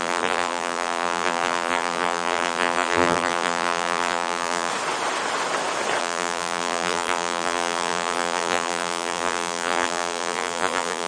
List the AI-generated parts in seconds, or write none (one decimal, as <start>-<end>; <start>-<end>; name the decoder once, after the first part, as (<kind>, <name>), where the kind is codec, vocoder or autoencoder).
0.0-4.7 (vocoder, BigVGAN v2); 6.0-11.1